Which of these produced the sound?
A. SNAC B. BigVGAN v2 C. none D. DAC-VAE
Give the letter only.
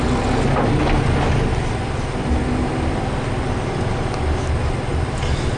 C